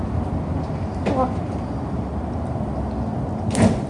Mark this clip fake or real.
real